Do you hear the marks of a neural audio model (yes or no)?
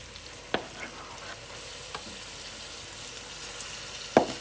no